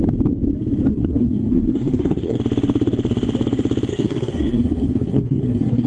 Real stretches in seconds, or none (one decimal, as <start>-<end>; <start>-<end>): 0.0-0.9; 2.4-3.9